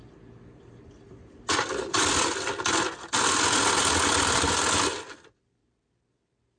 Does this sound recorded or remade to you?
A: recorded